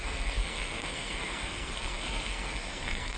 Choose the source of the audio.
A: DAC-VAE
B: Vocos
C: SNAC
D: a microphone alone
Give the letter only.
C